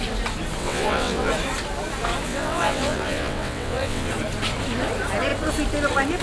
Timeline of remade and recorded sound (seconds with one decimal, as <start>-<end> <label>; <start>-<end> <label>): 0.0-0.6 recorded; 0.6-1.3 remade; 1.3-2.3 recorded; 2.3-4.1 remade; 4.1-6.2 recorded